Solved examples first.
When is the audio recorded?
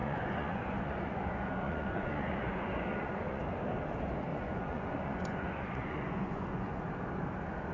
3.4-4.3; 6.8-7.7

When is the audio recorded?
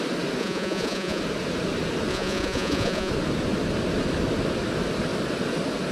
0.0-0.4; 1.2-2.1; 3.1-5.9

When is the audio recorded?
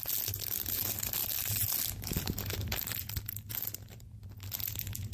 0.0-5.1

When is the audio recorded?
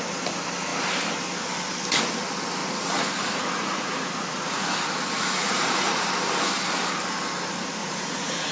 0.0-2.6; 6.0-7.8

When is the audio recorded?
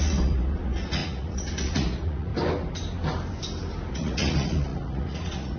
2.3-3.9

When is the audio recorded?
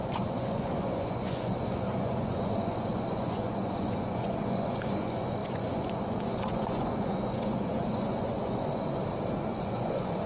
9.0-9.5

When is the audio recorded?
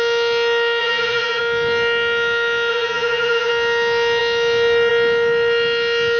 0.0-0.8; 1.4-2.7; 3.5-6.2